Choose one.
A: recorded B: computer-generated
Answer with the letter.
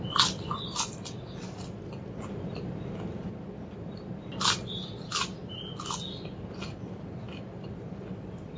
A